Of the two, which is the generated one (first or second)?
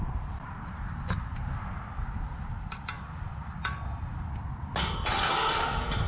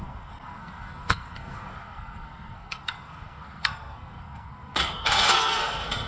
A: second